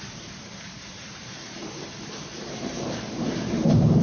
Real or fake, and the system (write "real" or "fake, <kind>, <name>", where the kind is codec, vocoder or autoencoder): fake, vocoder, BigVGAN v2